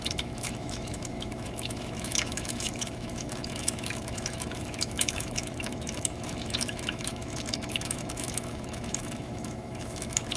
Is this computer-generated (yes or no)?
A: yes